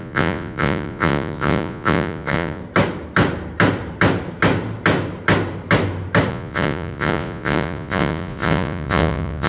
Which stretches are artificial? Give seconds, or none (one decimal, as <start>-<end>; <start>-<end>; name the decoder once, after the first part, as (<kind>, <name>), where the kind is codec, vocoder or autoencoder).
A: 0.0-2.6 (vocoder, Vocos); 6.3-9.5